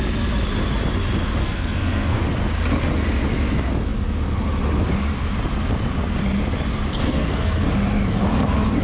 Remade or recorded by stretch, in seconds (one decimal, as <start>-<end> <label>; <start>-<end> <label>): 0.0-1.4 recorded; 1.4-2.2 remade; 2.2-6.9 recorded; 6.9-7.7 remade; 7.7-8.8 recorded